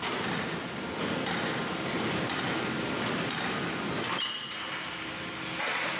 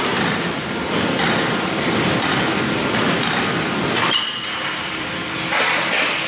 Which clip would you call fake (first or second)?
second